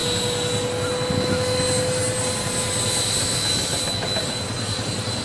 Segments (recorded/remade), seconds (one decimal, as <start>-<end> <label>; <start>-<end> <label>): 0.0-5.2 recorded